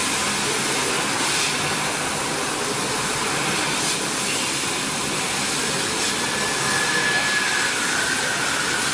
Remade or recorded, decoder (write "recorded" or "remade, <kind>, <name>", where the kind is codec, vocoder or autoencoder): recorded